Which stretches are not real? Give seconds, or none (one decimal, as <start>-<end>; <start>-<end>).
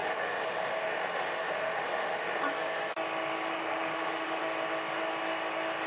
0.0-2.4; 3.5-4.4